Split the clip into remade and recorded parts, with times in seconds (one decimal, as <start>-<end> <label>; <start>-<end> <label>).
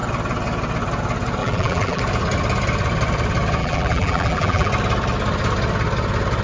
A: 0.0-1.4 recorded; 1.4-2.0 remade; 2.0-3.6 recorded; 3.6-4.7 remade; 4.7-6.4 recorded